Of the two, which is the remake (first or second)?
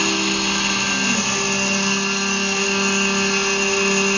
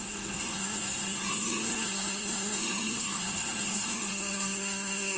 second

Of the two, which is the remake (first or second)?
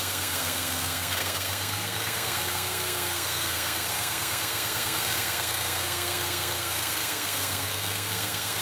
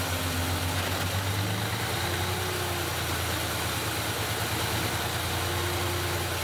first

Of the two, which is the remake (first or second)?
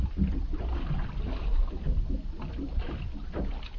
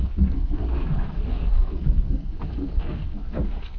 second